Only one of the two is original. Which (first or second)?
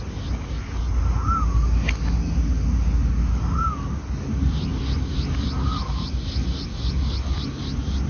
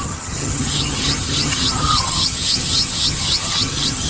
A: first